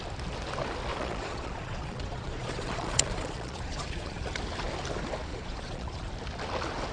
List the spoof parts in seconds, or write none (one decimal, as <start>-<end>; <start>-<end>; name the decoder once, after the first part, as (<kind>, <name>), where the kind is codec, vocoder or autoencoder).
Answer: 0.9-4.3 (vocoder, Vocos); 5.3-6.1